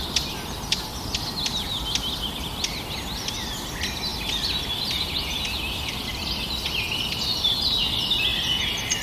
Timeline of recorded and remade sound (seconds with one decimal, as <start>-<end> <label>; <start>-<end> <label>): 0.0-8.3 recorded; 8.3-9.0 remade